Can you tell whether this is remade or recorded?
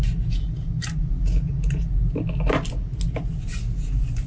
recorded